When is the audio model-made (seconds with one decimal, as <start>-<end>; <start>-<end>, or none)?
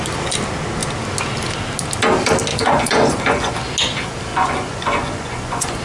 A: 2.5-3.5; 4.3-5.8